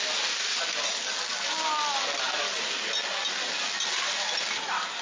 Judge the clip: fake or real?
real